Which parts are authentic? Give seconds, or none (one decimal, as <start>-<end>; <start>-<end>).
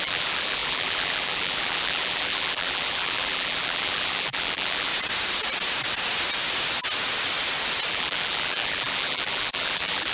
4.9-7.9